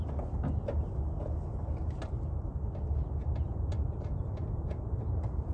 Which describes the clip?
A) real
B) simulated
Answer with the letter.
A